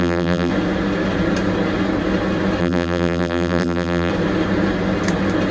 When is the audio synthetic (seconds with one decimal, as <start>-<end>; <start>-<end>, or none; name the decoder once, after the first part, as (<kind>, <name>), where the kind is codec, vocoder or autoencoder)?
0.0-0.5 (vocoder, BigVGAN v2); 2.6-4.1